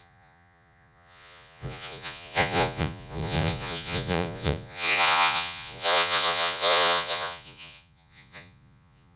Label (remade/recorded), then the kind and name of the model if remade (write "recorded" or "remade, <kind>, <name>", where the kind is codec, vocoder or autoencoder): remade, vocoder, Vocos